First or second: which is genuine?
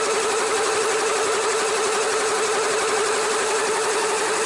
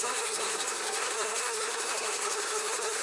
first